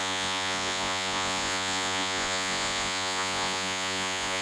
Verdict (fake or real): fake